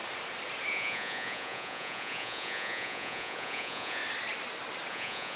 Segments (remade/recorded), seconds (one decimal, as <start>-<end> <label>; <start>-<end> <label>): 0.0-0.7 recorded; 0.7-4.0 remade; 4.0-4.9 recorded; 4.9-5.4 remade